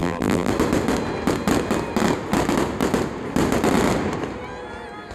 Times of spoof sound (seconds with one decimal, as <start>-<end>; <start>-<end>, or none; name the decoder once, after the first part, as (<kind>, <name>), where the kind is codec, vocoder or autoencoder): 0.0-0.5 (vocoder, BigVGAN v2)